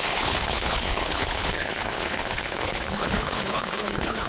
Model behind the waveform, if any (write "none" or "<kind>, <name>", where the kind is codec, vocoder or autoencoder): codec, HILCodec